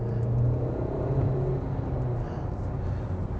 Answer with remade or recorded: recorded